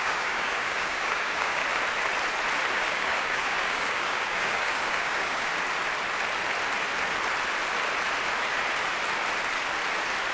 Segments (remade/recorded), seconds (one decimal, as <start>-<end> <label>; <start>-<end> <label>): 0.0-1.6 remade; 1.6-2.7 recorded; 2.7-5.5 remade; 5.5-10.3 recorded